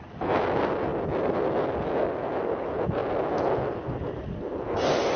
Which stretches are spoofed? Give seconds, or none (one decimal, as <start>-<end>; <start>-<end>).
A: none